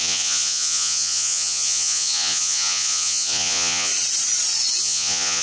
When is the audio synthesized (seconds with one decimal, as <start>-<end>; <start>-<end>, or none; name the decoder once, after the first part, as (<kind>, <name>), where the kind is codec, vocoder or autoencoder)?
0.0-3.9 (vocoder, Vocos); 4.8-5.4

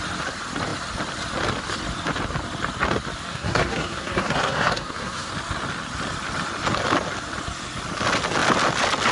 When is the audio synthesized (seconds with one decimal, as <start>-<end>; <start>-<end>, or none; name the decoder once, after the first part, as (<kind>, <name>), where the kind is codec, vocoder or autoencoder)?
3.3-5.3 (codec, SNAC)

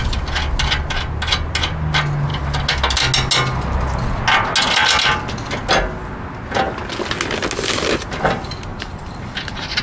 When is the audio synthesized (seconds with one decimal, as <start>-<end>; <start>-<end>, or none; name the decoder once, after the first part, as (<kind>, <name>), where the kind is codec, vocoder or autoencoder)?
8.7-9.8 (vocoder, BigVGAN v2)

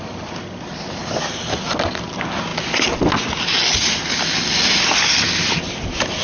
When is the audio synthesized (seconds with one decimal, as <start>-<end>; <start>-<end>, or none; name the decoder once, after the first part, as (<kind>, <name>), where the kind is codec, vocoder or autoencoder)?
none